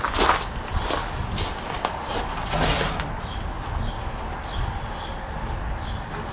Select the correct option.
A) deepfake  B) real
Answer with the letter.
B